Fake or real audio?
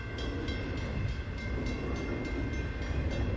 real